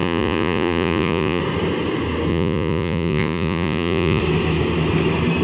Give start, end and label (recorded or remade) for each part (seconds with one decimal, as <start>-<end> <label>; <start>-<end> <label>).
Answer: 0.0-1.4 remade; 1.4-2.3 recorded; 2.3-4.2 remade; 4.2-5.4 recorded